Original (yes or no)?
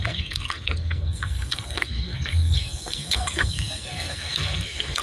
no